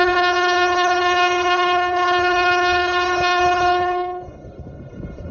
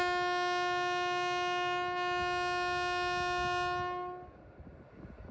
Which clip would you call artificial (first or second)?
first